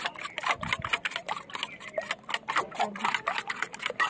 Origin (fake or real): real